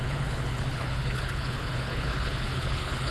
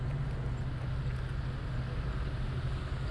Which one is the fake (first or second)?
first